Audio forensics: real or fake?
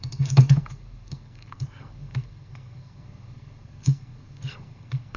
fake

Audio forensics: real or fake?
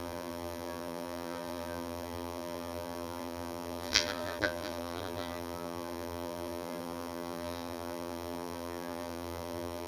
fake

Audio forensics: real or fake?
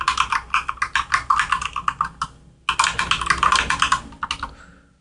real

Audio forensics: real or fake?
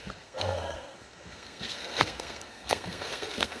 fake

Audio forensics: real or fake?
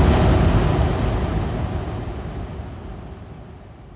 real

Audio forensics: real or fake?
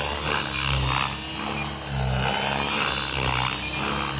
real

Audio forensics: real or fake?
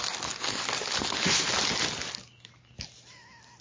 real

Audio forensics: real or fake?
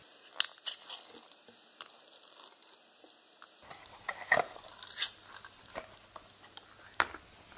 real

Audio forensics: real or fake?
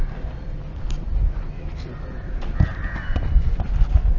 real